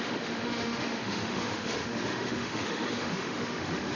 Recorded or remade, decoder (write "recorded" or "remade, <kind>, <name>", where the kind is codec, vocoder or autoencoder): remade, autoencoder, DAC-VAE